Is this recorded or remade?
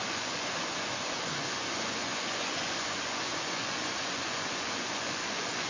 remade